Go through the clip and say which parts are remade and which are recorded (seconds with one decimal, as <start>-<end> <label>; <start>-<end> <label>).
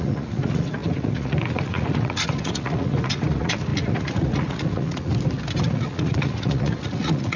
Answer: 0.0-5.1 remade; 5.1-5.6 recorded; 5.6-7.4 remade